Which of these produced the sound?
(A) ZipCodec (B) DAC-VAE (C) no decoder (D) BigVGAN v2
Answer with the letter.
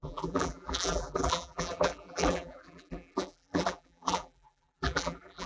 D